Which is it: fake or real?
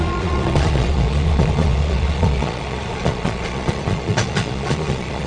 fake